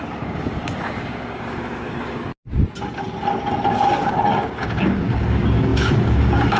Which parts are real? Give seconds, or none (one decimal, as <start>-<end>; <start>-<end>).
2.3-3.9

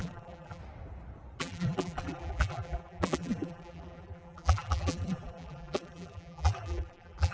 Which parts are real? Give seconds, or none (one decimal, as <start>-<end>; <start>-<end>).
0.6-1.4